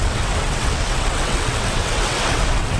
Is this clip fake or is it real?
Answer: fake